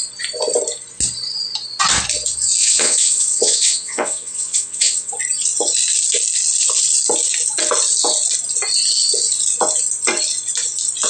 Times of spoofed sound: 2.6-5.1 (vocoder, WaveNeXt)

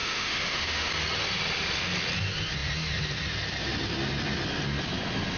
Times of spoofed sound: 0.0-0.9 (autoencoder, DAC-VAE)

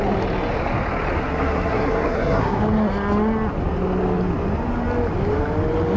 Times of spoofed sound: 1.2-2.6 (codec, SNAC)

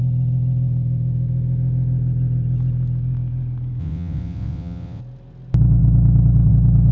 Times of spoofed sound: 3.8-5.0 (vocoder, WaveNeXt)

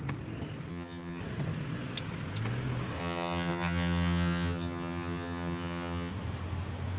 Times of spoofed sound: 0.7-1.2 (vocoder, HiFi-GAN); 3.0-6.1

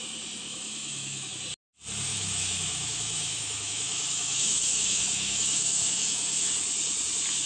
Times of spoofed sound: 0.4-1.3 (autoencoder, DAC-VAE); 2.1-6.5

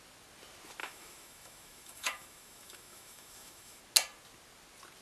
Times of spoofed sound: 0.8-3.8 (autoencoder, DAC-VAE)